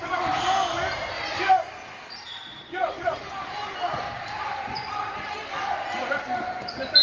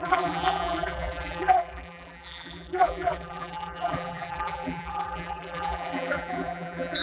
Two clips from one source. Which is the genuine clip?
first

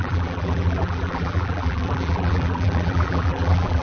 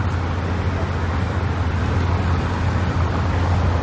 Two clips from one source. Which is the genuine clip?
second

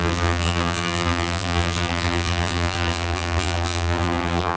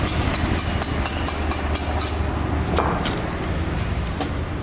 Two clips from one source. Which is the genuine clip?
second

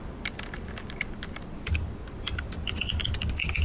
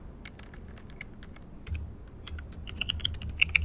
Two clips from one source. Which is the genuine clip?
second